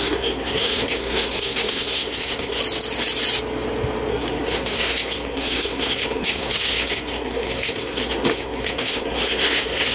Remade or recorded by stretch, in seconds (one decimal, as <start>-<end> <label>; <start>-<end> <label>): 0.0-2.6 remade; 2.6-4.1 recorded; 4.1-9.9 remade